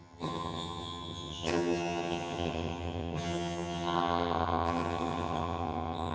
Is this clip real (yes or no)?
no